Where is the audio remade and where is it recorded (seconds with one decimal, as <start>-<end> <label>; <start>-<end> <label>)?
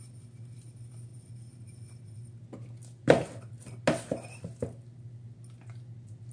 0.0-6.3 recorded